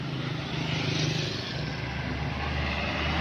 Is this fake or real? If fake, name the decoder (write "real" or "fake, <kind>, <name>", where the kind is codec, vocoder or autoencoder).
real